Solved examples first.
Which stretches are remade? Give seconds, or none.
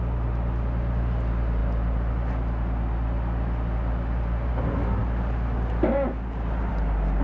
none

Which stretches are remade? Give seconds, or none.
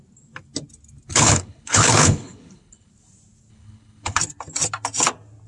1.1-2.9 (codec, HILCodec); 3.5-4.2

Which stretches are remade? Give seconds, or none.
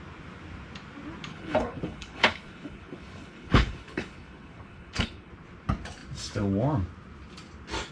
1.3-5.3 (codec, HILCodec)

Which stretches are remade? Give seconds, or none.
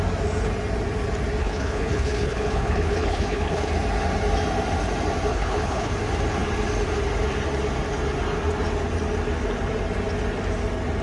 1.4-3.7 (codec, HILCodec); 5.3-5.9